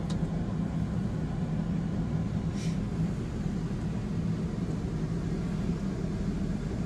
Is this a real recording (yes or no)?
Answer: yes